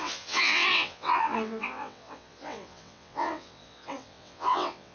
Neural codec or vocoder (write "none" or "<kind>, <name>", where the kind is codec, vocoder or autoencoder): vocoder, WaveNeXt